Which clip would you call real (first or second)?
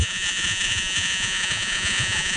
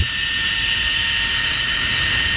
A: second